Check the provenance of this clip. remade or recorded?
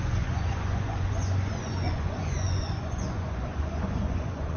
remade